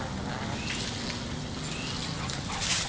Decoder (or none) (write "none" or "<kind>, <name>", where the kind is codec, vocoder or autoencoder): none